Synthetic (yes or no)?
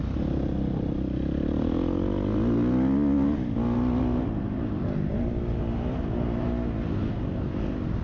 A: no